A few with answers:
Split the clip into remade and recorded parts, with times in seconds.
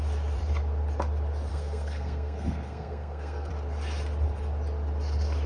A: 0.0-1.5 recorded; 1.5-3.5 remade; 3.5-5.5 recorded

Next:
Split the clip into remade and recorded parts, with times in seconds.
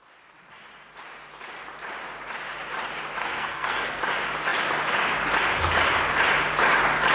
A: 0.0-3.2 recorded; 3.2-4.0 remade; 4.0-7.1 recorded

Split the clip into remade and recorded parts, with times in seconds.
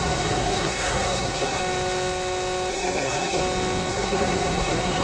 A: 0.0-1.6 remade; 1.6-2.7 recorded; 2.7-3.4 remade; 3.4-3.9 recorded; 3.9-5.0 remade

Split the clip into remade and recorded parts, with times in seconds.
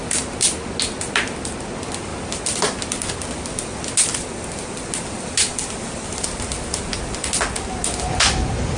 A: 0.0-8.8 recorded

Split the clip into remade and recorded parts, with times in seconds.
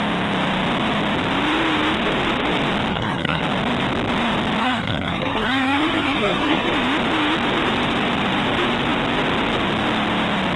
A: 0.0-2.9 recorded; 2.9-3.4 remade; 3.4-4.6 recorded; 4.6-6.7 remade; 6.7-10.6 recorded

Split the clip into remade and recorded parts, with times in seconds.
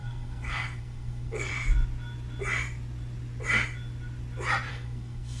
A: 0.0-1.5 remade; 1.5-4.7 recorded; 4.7-5.4 remade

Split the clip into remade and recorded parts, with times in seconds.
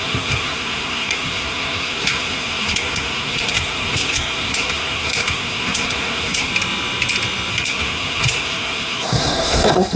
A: 0.0-6.5 remade; 6.5-7.5 recorded; 7.5-10.0 remade